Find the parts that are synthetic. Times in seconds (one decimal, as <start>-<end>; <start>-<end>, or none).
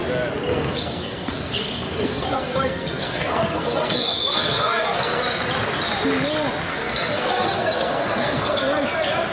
0.5-5.2; 6.7-8.6